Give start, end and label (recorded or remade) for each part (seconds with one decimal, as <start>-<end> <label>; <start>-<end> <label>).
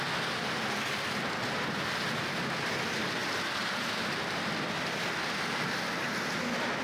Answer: 0.0-6.8 recorded